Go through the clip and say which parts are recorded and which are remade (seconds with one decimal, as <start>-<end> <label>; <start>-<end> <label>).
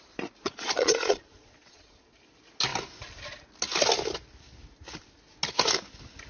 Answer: 0.0-0.4 recorded; 0.4-2.2 remade; 2.2-6.3 recorded